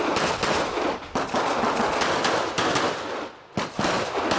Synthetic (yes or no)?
no